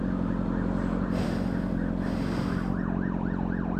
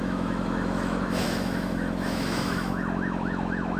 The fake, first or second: second